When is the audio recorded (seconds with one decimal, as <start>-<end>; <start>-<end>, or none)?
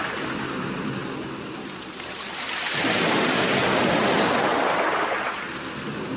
0.0-6.2